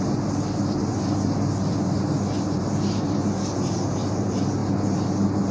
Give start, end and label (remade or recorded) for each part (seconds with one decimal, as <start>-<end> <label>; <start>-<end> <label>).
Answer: 0.0-5.5 recorded